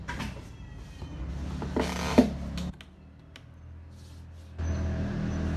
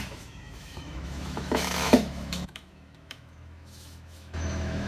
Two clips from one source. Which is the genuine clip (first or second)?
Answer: first